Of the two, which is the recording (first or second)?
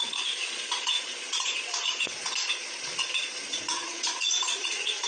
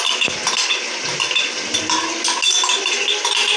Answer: second